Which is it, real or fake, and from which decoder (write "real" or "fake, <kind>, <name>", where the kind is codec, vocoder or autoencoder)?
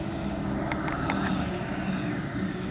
fake, codec, DAC